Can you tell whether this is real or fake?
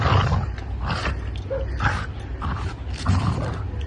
real